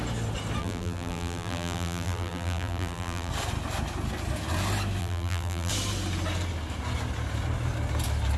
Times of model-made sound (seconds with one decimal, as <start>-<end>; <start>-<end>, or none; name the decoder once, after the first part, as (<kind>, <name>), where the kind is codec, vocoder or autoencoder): 0.6-3.3 (vocoder, BigVGAN v2); 5.0-5.7